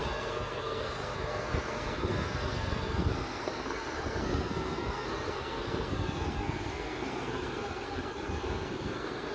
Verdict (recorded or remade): remade